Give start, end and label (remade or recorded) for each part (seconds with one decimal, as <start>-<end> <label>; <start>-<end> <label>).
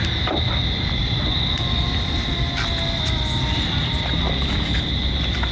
0.0-5.5 recorded